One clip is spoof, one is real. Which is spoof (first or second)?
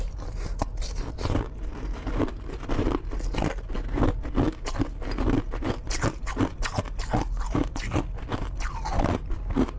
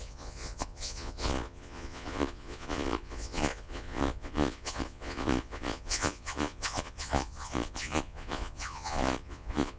second